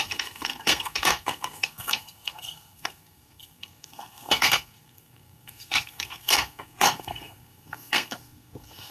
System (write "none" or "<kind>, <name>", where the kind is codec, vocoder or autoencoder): codec, SNAC